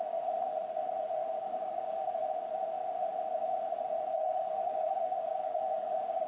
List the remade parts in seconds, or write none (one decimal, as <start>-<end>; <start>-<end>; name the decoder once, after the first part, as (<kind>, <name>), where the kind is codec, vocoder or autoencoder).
1.2-2.0 (codec, DAC); 4.1-6.3

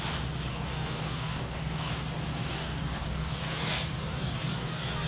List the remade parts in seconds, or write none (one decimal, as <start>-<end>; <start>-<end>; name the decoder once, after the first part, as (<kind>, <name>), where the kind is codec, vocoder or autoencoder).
0.5-1.9 (codec, DAC); 2.3-5.1

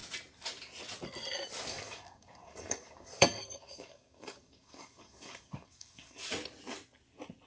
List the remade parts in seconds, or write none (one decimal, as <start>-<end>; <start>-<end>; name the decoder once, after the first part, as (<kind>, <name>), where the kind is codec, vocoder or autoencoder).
1.7-6.2 (codec, DAC)